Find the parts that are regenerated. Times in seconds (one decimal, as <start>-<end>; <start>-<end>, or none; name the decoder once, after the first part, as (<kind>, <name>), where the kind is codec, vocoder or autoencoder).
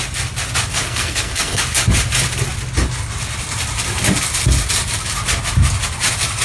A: 0.7-1.6 (codec, SNAC)